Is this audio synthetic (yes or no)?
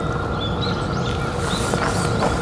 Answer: no